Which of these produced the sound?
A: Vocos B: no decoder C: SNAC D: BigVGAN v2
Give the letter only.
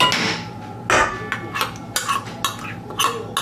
B